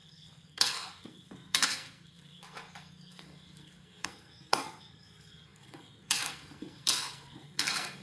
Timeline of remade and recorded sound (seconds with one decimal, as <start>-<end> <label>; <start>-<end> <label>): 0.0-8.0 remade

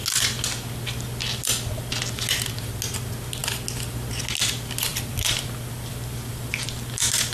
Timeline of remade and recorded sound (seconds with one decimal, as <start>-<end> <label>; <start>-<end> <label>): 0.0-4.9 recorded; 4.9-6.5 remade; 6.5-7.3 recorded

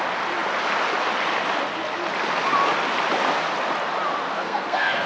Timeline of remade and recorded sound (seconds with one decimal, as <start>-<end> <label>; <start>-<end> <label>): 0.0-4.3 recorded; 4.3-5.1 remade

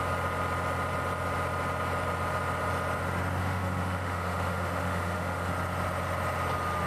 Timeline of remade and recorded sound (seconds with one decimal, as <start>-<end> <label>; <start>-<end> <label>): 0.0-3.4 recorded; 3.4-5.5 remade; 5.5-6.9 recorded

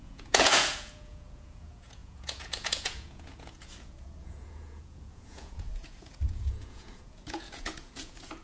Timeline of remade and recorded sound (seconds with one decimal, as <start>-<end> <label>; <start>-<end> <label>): 0.0-8.4 remade

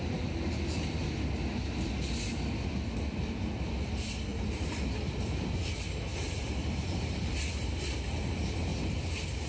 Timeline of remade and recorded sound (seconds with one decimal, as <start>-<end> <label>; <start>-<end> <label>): 0.0-4.3 recorded; 4.3-4.8 remade; 4.8-6.1 recorded; 6.1-7.8 remade; 7.8-9.5 recorded